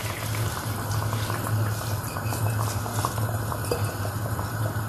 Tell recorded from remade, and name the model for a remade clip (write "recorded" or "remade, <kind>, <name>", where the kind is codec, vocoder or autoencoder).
recorded